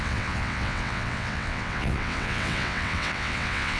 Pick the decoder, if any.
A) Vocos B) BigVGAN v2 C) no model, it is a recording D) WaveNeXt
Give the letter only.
D